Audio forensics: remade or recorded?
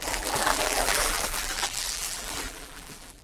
remade